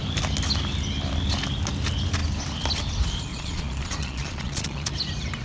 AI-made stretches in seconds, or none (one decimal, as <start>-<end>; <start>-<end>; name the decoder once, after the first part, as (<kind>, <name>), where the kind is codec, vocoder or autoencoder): 3.3-4.9 (vocoder, Vocos)